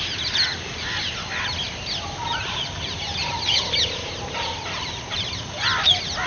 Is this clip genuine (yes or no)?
yes